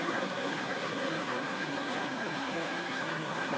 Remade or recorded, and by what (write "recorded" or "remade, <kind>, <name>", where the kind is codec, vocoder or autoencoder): remade, codec, SNAC